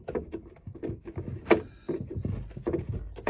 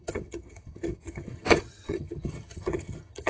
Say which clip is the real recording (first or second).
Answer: first